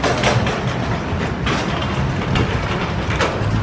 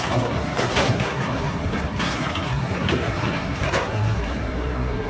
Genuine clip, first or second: first